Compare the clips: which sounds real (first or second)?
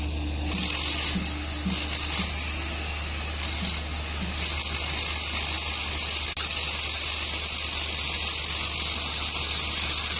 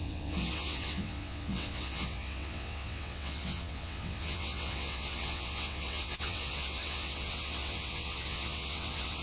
first